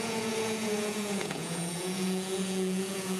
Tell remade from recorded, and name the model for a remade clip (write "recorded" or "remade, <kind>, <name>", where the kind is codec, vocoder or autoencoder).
remade, vocoder, Vocos